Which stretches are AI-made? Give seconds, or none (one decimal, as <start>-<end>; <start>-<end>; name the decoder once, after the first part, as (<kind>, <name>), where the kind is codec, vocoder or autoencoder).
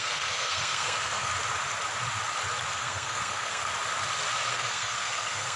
0.0-1.3 (codec, SNAC); 2.7-3.6; 4.5-5.6